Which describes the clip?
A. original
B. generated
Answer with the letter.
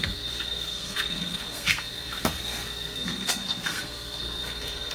B